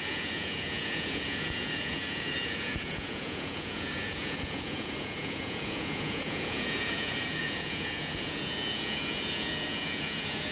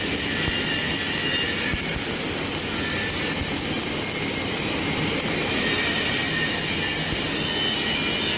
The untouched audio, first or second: second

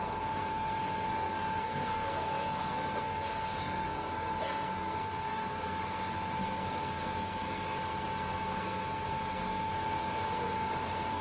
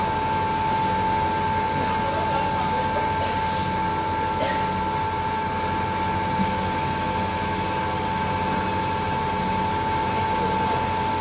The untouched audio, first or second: second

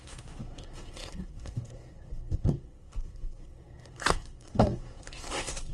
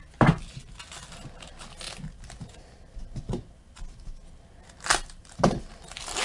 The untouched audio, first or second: second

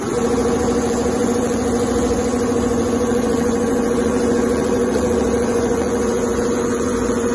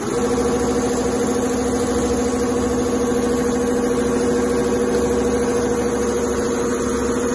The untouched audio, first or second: second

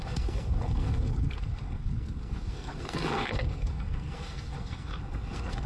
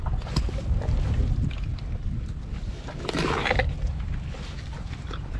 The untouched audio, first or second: second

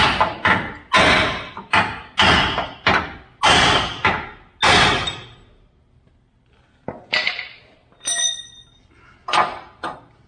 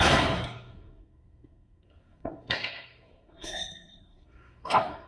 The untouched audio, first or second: first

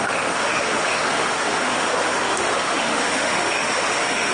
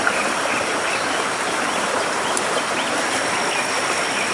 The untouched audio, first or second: second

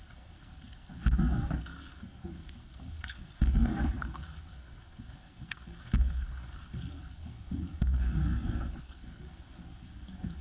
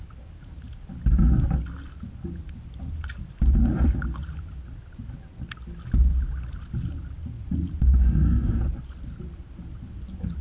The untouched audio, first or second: second